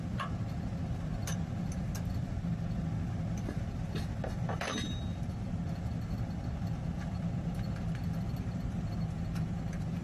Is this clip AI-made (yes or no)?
no